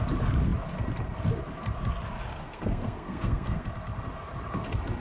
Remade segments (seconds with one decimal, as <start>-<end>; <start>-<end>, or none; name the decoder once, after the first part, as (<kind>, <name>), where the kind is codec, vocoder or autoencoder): 2.3-3.7 (codec, SNAC)